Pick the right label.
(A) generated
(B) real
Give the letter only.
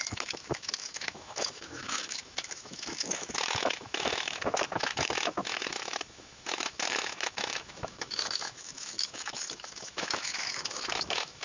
A